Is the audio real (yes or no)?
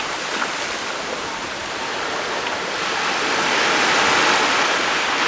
yes